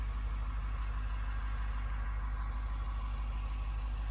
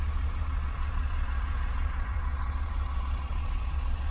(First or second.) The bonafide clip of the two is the first